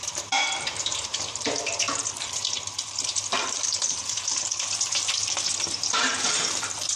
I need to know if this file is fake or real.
fake